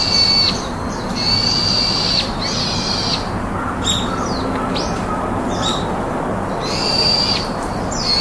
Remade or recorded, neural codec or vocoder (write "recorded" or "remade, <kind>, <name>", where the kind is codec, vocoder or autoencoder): recorded